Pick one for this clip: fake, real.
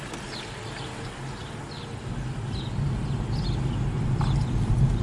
real